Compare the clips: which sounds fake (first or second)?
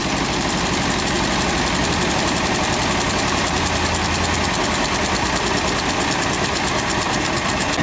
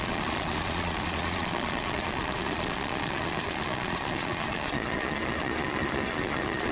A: second